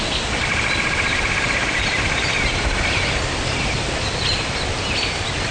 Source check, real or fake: real